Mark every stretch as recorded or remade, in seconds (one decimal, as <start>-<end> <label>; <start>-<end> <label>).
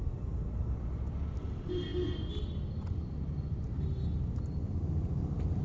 0.0-5.6 recorded